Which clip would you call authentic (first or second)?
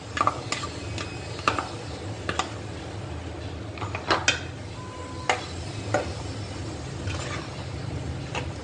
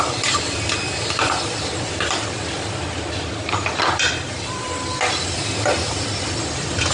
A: first